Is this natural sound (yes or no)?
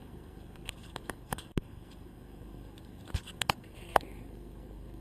no